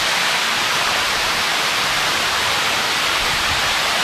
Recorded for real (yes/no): no